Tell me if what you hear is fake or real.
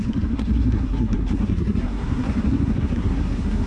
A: fake